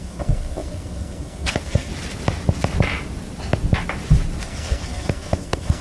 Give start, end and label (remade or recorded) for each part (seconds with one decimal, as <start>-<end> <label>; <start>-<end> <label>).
0.0-1.9 remade; 1.9-4.4 recorded; 4.4-5.8 remade